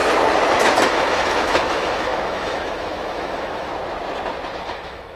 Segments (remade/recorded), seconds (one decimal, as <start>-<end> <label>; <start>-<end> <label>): 0.0-0.5 recorded; 0.5-3.7 remade; 3.7-4.6 recorded; 4.6-5.2 remade